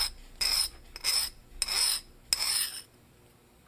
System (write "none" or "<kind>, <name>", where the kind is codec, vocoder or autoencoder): none